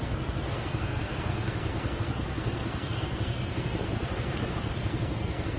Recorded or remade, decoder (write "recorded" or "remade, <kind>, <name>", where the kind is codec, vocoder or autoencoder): remade, codec, SNAC